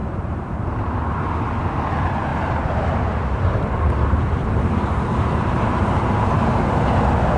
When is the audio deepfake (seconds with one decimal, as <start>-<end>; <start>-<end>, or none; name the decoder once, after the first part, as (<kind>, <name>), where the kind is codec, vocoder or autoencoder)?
0.0-1.3 (vocoder, BigVGAN v2); 2.3-6.7